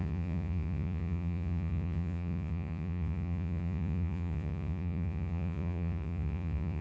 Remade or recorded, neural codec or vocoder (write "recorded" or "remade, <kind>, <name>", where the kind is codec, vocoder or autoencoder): remade, vocoder, Vocos